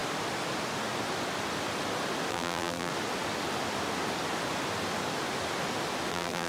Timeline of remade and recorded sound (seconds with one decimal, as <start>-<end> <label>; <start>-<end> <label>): 0.0-2.3 recorded; 2.3-2.9 remade; 2.9-6.1 recorded; 6.1-6.5 remade